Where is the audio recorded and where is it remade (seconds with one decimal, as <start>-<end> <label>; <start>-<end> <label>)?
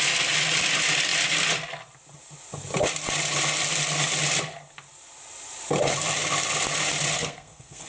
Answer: 0.0-7.1 recorded; 7.1-7.9 remade